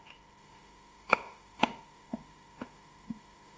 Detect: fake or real fake